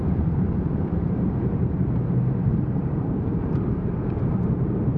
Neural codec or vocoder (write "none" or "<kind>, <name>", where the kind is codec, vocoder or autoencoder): vocoder, BigVGAN v2